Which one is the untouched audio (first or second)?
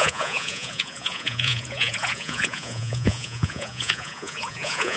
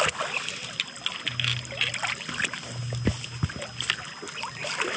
second